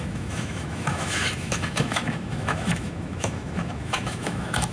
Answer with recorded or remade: remade